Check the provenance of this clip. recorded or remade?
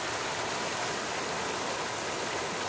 recorded